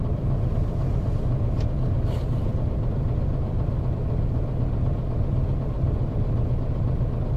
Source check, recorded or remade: remade